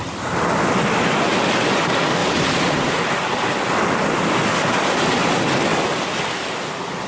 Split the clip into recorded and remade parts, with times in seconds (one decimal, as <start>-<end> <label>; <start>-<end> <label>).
0.0-2.2 recorded; 2.2-3.4 remade; 3.4-7.1 recorded